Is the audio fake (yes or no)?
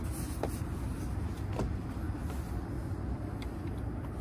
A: no